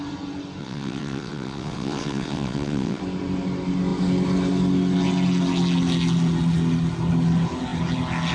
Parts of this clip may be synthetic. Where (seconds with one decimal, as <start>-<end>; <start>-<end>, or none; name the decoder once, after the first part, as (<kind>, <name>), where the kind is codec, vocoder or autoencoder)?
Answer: 0.6-3.0 (vocoder, WaveNeXt)